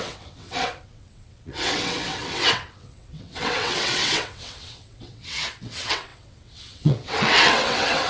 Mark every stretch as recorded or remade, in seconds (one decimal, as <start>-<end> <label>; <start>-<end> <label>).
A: 0.0-8.1 remade